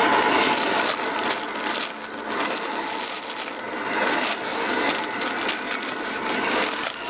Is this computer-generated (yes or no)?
no